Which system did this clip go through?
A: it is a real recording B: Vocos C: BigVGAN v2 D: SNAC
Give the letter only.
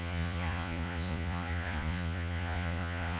B